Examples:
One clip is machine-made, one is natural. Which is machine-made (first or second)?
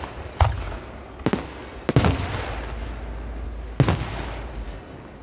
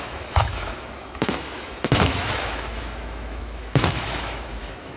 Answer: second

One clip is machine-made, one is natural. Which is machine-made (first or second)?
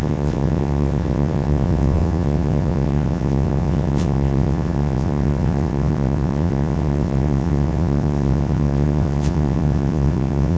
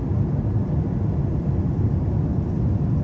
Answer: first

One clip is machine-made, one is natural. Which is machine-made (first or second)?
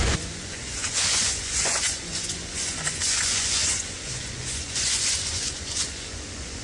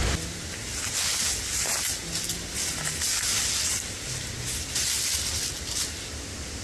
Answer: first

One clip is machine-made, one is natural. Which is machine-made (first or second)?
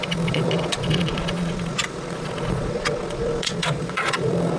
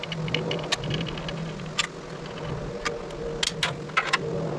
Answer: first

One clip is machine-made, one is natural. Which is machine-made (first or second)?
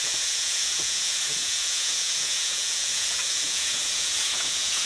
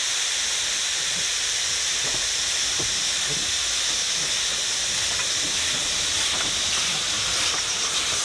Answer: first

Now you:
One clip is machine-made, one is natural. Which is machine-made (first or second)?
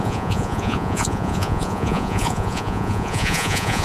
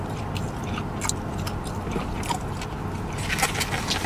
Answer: first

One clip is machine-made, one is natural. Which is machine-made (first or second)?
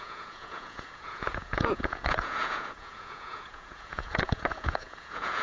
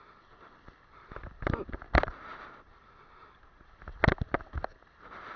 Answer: first